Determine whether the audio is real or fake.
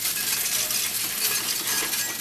real